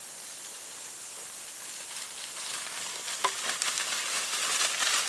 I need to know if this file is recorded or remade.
recorded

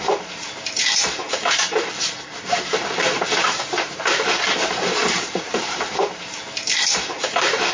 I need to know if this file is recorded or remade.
remade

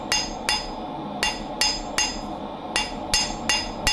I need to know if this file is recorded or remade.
recorded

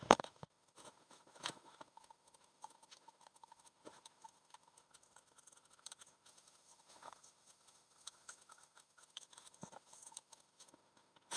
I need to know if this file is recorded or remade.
remade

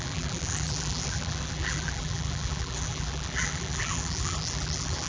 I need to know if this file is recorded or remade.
remade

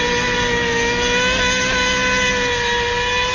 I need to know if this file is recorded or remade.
recorded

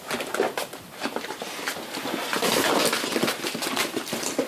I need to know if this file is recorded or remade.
recorded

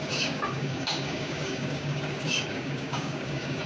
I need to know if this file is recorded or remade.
remade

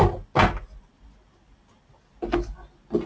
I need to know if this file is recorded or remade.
recorded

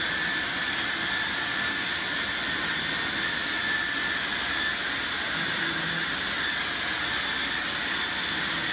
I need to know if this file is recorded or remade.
recorded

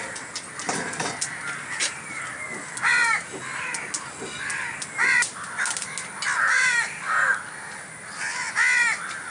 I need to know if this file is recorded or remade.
recorded